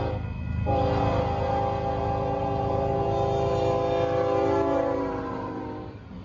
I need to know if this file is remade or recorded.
recorded